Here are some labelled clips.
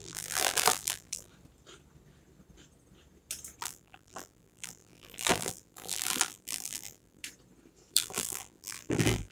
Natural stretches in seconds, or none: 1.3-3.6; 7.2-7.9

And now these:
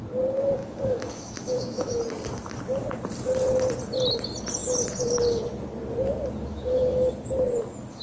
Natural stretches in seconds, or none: 0.0-0.6; 2.0-6.5; 7.1-8.0